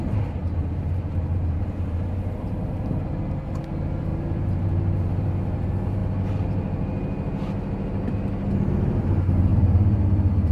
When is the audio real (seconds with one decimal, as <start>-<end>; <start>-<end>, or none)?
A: 0.0-0.4; 2.5-4.1; 5.3-9.5; 10.0-10.5